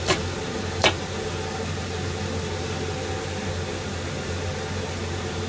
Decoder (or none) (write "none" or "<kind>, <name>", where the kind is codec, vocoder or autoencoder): none